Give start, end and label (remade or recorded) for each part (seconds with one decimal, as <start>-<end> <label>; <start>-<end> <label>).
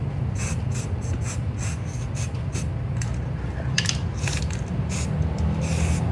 0.0-6.1 recorded